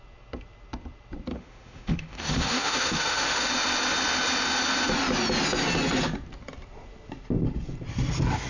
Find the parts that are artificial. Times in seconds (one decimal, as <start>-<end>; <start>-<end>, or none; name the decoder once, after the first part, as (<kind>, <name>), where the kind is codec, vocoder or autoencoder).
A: 1.3-3.5 (autoencoder, DAC-VAE)